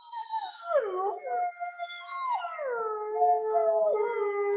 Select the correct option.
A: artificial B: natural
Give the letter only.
B